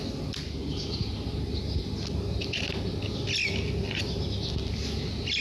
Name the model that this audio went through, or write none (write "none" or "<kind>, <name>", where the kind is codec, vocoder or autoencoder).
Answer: none